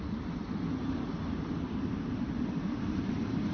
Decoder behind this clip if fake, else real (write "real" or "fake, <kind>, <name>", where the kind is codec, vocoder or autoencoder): real